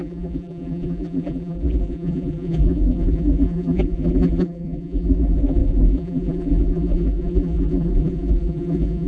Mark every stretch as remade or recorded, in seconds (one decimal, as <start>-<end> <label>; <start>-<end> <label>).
0.0-9.1 remade